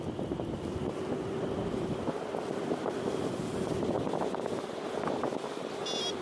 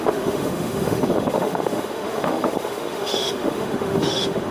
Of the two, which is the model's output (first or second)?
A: second